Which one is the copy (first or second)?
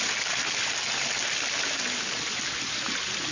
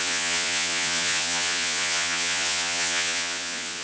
second